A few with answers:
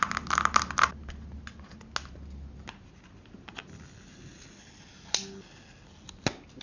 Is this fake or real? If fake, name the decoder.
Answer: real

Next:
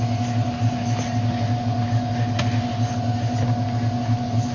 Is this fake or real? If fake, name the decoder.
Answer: real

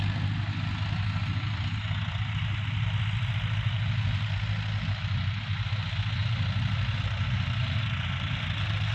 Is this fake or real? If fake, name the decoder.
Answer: real